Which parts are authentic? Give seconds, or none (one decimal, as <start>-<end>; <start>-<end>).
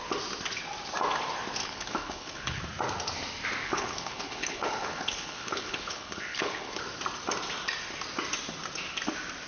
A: 0.0-1.6; 2.6-3.6; 6.8-9.5